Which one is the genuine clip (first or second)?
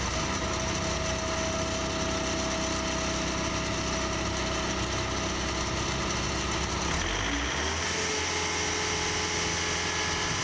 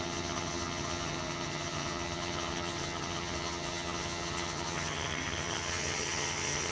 first